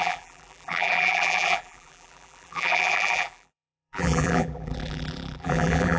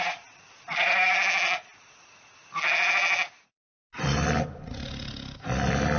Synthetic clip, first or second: first